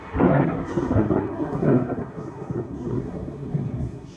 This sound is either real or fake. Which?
fake